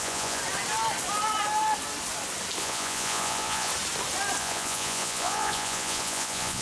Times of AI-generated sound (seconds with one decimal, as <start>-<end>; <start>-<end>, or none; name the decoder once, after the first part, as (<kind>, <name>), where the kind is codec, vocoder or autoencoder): 0.0-0.4 (vocoder, Vocos); 2.6-3.7; 4.4-6.6